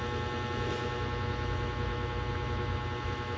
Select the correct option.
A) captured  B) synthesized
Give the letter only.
A